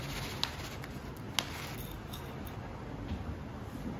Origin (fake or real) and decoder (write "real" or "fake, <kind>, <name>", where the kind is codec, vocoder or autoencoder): real